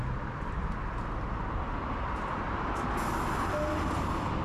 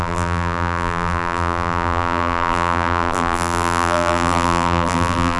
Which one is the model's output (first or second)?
second